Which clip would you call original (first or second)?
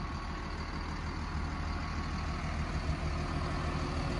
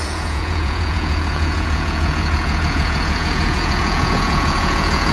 first